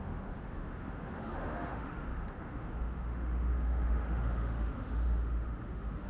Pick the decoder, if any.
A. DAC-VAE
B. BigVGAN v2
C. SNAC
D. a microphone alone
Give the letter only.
A